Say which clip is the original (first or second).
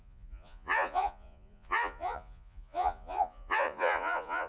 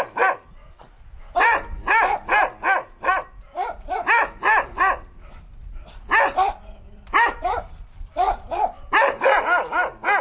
second